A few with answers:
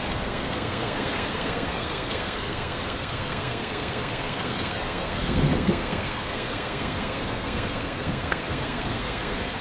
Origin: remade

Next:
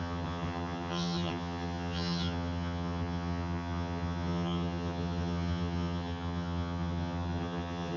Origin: remade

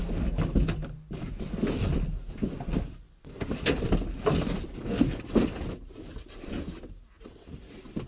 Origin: recorded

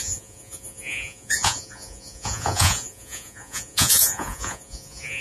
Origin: remade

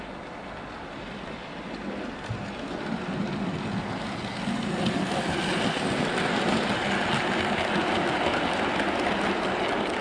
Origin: recorded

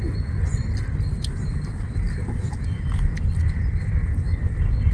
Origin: recorded